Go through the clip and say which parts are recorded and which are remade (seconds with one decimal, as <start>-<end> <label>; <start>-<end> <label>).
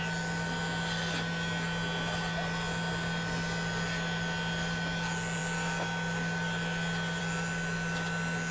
0.0-8.5 recorded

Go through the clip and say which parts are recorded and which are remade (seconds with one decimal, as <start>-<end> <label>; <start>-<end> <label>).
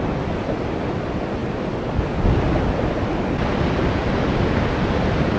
0.0-5.4 recorded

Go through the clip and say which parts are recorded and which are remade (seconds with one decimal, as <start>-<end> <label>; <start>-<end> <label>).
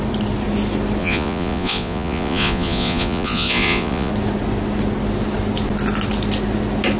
0.0-1.0 recorded; 1.0-4.1 remade; 4.1-7.0 recorded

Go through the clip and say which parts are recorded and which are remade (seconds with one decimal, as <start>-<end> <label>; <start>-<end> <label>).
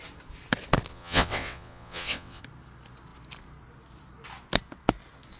0.0-0.9 recorded; 0.9-2.4 remade; 2.4-5.4 recorded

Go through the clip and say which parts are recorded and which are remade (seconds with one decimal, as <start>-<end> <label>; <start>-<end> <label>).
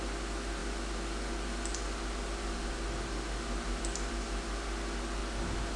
0.0-5.8 recorded